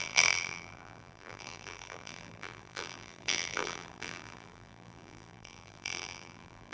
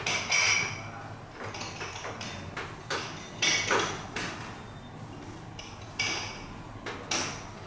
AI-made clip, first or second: first